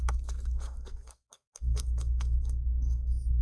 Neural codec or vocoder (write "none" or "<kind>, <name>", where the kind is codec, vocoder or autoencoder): codec, SNAC